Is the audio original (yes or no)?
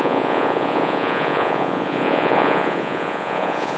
no